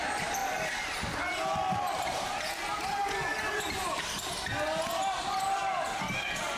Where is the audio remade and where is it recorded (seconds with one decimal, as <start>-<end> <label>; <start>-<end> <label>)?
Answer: 0.0-6.6 recorded